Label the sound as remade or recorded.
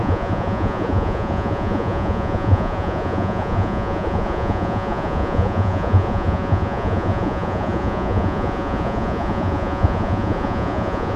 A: remade